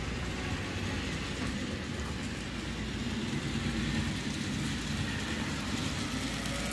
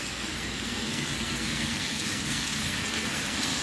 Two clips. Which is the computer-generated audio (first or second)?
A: second